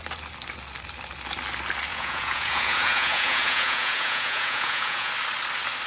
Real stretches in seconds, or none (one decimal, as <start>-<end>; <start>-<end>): 0.0-1.9; 5.1-5.9